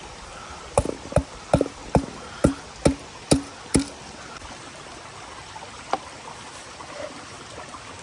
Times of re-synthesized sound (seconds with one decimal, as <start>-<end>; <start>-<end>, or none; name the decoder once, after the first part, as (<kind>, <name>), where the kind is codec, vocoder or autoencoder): 0.0-1.8 (vocoder, BigVGAN v2); 3.7-8.0